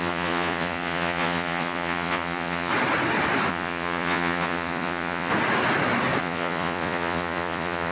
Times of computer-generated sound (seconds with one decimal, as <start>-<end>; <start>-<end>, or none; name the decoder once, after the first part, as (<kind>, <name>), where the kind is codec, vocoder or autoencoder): 0.0-2.7 (vocoder, Vocos); 3.5-5.3; 6.2-7.9